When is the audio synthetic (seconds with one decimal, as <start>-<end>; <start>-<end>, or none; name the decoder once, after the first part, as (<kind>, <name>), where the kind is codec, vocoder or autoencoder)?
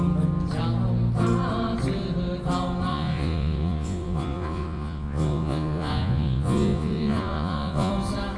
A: 2.9-7.9 (vocoder, Vocos)